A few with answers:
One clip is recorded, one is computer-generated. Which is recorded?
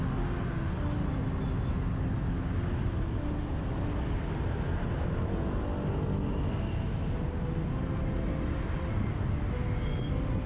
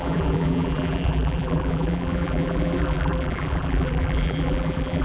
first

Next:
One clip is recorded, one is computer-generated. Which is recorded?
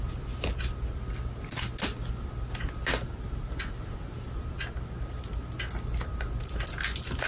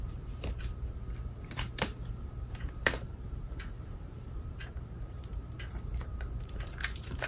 first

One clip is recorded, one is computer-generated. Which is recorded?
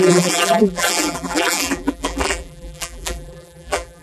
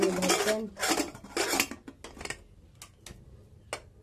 second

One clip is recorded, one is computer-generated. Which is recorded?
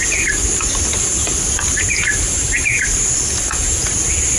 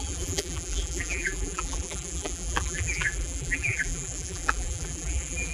first